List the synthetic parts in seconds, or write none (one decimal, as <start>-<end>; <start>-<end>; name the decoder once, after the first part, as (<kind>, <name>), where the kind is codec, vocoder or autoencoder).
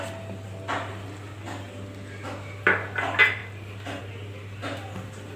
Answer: none